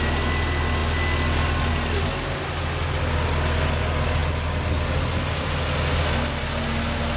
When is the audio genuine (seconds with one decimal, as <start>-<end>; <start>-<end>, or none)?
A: 0.0-7.2